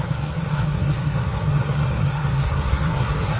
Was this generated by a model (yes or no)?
yes